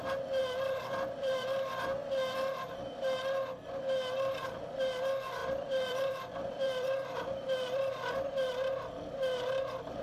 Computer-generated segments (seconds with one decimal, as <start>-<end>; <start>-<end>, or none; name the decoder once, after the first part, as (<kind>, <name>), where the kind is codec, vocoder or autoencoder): 0.4-1.7 (vocoder, BigVGAN v2); 5.4-8.5